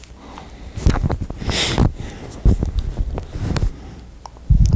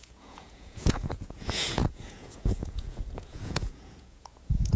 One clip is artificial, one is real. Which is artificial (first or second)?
second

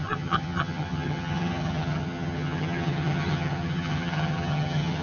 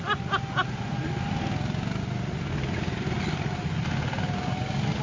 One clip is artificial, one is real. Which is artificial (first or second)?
first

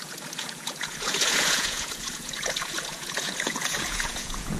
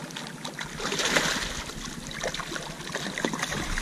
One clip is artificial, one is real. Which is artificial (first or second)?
first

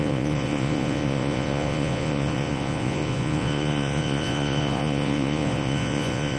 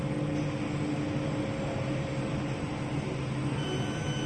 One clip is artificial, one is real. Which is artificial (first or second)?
first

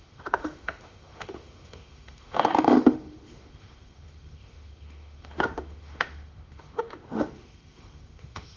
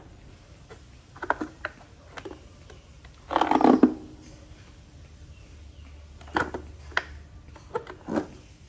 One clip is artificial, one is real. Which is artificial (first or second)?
first